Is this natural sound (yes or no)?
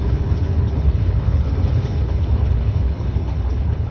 no